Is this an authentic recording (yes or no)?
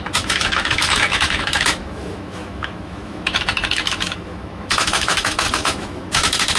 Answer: no